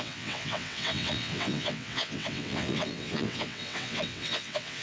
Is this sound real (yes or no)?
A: no